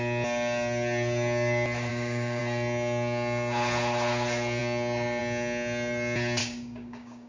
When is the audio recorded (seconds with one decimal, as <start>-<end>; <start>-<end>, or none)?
0.0-1.9; 2.4-6.4